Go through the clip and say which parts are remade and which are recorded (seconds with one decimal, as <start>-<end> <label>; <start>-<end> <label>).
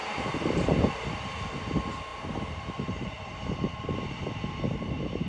0.0-2.1 recorded; 2.1-5.3 remade